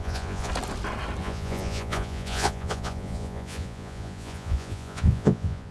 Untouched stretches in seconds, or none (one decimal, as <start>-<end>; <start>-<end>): 0.5-1.2